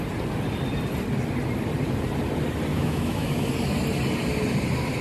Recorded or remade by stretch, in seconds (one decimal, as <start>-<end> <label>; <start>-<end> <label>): 0.0-2.7 recorded; 2.7-3.5 remade; 3.5-5.0 recorded